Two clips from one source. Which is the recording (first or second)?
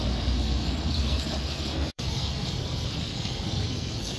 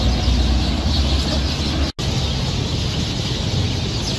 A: second